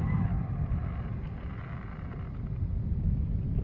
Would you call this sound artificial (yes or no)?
no